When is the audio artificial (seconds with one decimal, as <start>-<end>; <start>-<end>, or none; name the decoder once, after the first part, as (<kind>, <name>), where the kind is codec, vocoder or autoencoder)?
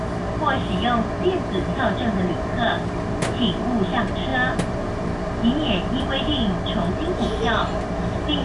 none